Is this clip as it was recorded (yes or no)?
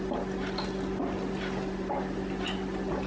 yes